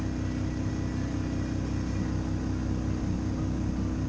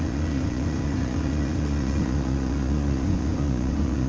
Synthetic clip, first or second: second